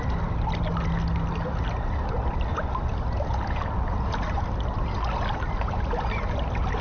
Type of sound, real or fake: real